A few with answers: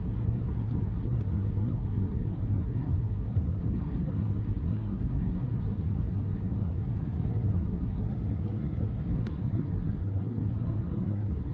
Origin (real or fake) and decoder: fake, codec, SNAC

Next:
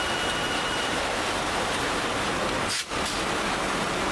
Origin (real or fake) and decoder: real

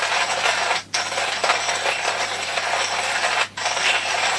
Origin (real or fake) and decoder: real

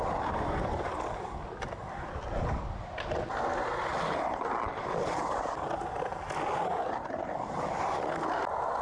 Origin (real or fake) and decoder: real